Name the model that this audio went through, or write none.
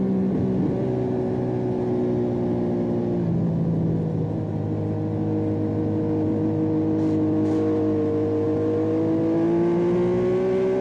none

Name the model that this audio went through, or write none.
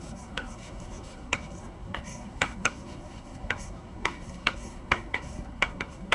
codec, SNAC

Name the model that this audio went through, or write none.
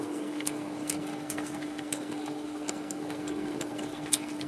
codec, SNAC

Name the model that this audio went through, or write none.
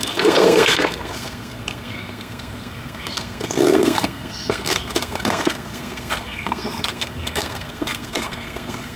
codec, SNAC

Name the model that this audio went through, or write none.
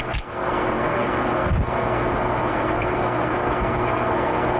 codec, SNAC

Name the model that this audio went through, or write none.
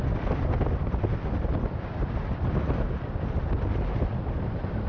none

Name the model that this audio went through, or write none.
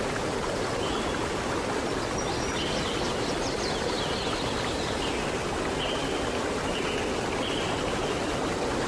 none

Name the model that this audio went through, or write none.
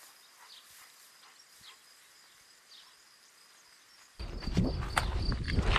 none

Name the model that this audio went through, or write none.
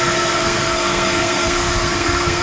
codec, SNAC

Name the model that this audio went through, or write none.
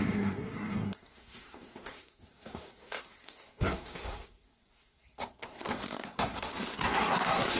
codec, SNAC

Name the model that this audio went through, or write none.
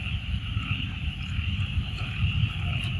none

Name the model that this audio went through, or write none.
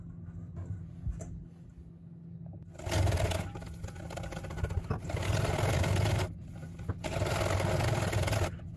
none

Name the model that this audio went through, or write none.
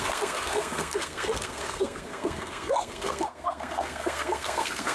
codec, SNAC